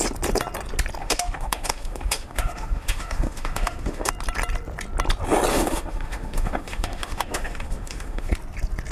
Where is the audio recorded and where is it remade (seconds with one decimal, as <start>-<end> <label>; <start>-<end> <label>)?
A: 0.0-1.0 recorded; 1.0-4.1 remade; 4.1-5.5 recorded; 5.5-8.3 remade; 8.3-8.9 recorded